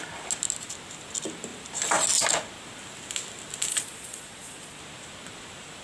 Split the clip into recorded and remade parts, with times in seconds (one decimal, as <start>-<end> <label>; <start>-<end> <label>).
0.0-3.7 recorded; 3.7-4.8 remade; 4.8-5.8 recorded